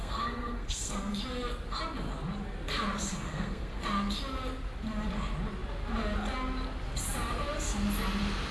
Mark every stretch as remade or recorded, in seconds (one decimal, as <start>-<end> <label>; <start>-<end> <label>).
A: 0.0-1.2 remade; 1.2-3.1 recorded; 3.1-3.8 remade; 3.8-8.5 recorded